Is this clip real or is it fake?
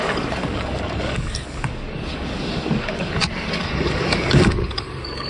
fake